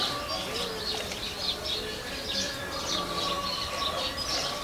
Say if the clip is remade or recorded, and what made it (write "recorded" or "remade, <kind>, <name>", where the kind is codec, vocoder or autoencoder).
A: recorded